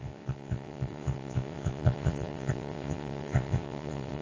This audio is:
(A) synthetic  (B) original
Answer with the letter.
A